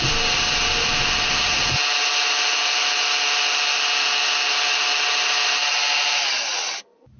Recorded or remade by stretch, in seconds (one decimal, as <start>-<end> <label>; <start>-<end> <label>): 0.0-7.2 recorded